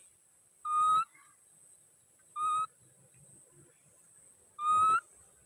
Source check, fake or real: real